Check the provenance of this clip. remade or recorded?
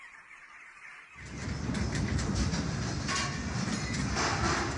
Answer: recorded